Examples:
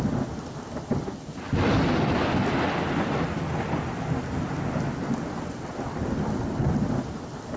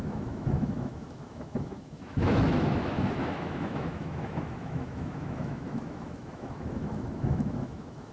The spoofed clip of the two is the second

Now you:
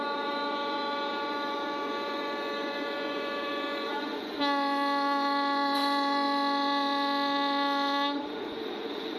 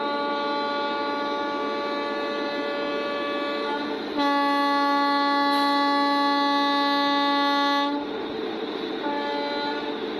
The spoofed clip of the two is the first